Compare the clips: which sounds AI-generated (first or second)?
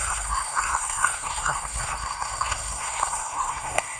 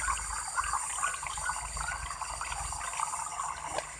first